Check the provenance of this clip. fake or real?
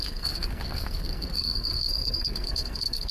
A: fake